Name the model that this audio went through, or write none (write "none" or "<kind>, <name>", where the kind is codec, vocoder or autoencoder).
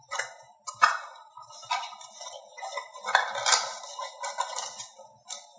none